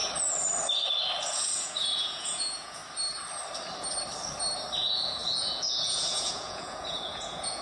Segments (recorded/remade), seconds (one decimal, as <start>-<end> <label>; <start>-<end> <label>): 0.0-1.3 recorded; 1.3-2.8 remade; 2.8-4.8 recorded; 4.8-7.6 remade